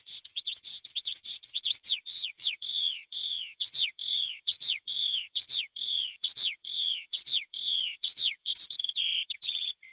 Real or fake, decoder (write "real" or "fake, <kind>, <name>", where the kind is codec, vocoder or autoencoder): fake, vocoder, WaveNeXt